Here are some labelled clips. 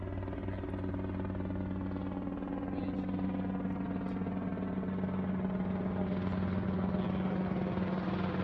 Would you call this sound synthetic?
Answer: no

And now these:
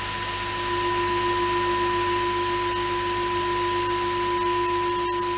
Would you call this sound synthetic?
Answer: no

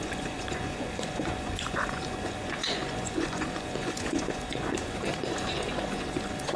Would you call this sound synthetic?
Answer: yes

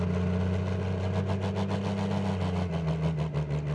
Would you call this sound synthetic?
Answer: no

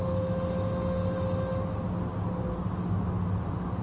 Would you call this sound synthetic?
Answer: no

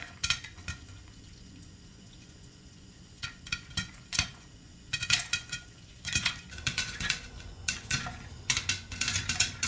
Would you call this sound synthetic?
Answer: yes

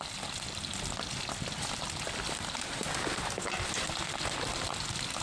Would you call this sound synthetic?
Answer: no